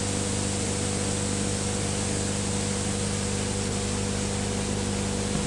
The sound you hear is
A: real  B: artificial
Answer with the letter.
A